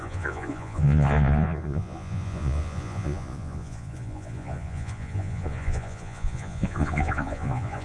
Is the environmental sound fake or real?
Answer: fake